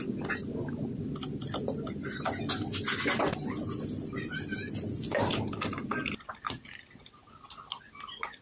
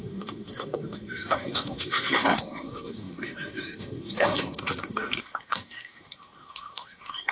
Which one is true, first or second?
first